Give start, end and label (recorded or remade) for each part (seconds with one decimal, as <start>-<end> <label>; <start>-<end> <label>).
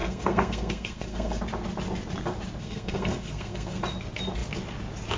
0.0-1.4 remade; 1.4-2.6 recorded; 2.6-3.8 remade; 3.8-5.2 recorded